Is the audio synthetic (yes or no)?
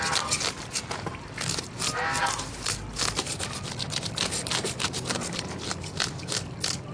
no